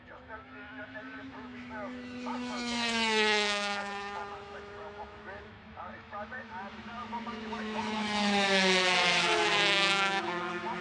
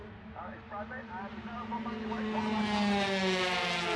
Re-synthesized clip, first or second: first